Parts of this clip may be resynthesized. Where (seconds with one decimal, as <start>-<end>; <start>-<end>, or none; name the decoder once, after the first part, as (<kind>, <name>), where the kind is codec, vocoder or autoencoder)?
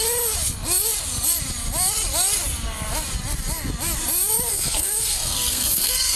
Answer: 4.5-6.2 (codec, SNAC)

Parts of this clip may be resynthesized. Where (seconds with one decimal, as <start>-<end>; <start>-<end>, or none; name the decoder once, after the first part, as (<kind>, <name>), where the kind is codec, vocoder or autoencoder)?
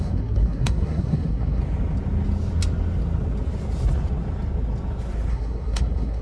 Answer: 0.0-1.6 (codec, SNAC); 5.3-6.2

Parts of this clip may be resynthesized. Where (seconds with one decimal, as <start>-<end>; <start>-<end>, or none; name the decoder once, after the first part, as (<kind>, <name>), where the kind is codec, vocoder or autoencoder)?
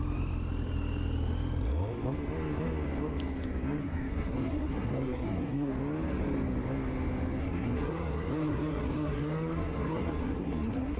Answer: 3.8-5.7 (codec, SNAC); 7.4-11.0